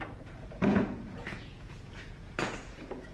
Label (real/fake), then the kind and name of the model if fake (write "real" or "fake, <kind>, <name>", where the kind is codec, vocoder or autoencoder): fake, vocoder, Vocos